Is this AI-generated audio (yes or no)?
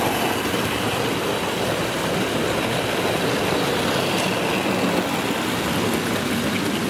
no